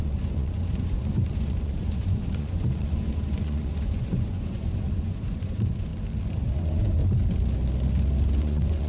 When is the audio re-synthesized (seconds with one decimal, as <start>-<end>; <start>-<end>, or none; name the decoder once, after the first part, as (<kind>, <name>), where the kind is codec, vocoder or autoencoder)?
0.0-5.9 (vocoder, Vocos); 6.6-7.0; 8.4-8.9